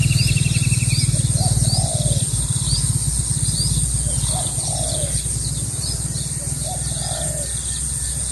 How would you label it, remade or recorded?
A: recorded